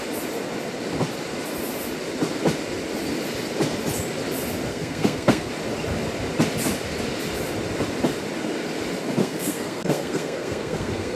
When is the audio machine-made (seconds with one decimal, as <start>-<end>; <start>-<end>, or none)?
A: 4.7-5.5; 9.2-11.2